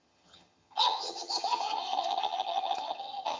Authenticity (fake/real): fake